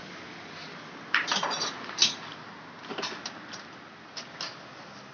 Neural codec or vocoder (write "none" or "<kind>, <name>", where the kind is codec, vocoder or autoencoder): none